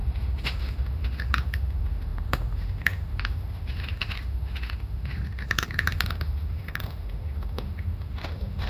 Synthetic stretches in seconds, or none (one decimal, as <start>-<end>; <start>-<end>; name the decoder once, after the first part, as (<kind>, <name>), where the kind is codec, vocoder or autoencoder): 0.0-8.7 (autoencoder, DAC-VAE)